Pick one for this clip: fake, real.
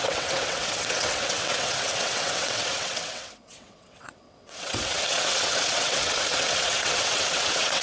fake